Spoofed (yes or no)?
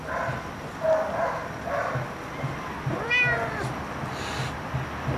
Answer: no